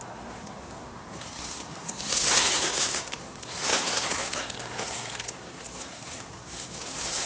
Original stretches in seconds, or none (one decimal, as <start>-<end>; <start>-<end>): none

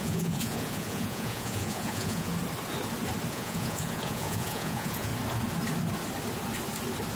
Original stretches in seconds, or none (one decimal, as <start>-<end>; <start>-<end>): 2.3-3.3; 5.1-7.1

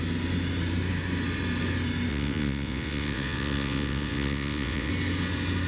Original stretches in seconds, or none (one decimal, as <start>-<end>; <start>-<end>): 0.0-2.1; 4.9-5.7